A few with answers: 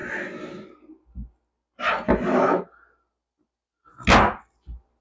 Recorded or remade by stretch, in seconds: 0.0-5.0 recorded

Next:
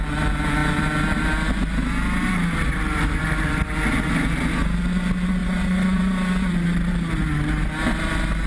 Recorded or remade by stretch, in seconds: 0.0-5.4 recorded; 5.4-6.0 remade; 6.0-8.5 recorded